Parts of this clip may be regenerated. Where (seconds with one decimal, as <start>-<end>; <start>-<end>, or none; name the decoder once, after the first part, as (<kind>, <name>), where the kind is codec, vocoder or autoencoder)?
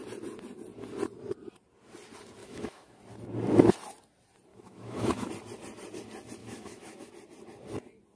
2.4-3.0 (autoencoder, DAC-VAE); 4.5-5.3; 6.4-7.1